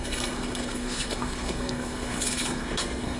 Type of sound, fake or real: fake